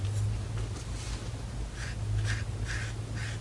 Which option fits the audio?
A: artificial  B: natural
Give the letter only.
B